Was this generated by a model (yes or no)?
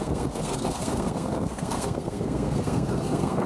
yes